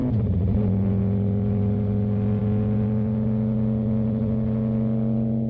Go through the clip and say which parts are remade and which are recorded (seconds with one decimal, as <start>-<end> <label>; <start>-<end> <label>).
0.0-5.5 recorded